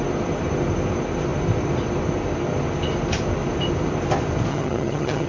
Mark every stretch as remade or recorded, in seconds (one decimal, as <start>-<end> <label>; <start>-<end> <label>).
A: 0.0-4.5 recorded; 4.5-5.3 remade